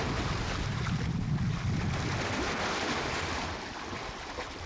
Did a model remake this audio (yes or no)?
no